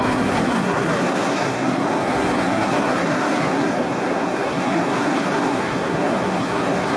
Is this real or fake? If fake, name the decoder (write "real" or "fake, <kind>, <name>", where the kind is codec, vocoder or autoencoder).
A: fake, codec, SNAC